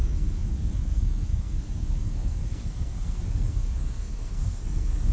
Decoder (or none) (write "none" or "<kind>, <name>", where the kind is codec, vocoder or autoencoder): codec, SNAC